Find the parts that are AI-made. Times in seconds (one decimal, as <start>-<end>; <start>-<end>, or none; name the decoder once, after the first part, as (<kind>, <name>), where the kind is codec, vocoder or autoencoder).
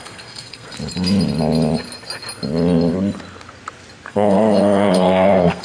0.0-0.7 (codec, SNAC); 4.1-5.6